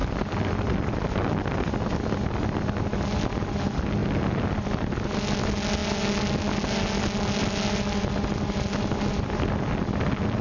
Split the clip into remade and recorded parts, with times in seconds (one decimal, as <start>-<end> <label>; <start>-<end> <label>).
0.0-10.4 recorded